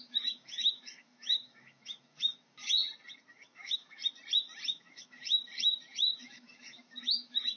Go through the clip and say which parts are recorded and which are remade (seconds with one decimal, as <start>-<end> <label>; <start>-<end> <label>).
0.0-2.7 remade; 2.7-3.3 recorded; 3.3-4.0 remade; 4.0-4.7 recorded; 4.7-7.6 remade

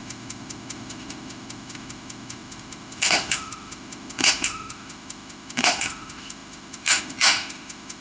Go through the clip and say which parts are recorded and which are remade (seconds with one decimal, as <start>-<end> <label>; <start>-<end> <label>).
0.0-8.0 remade

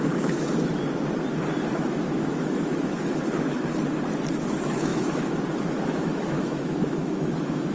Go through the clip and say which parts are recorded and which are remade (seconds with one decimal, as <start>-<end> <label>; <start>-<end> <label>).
0.0-0.7 remade; 0.7-1.7 recorded; 1.7-3.7 remade; 3.7-4.3 recorded; 4.3-7.7 remade